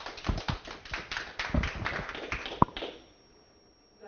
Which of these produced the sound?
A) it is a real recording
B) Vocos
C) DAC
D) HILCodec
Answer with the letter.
A